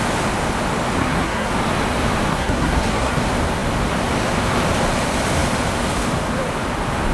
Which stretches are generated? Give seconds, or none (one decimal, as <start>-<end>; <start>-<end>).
1.0-1.5; 2.3-3.2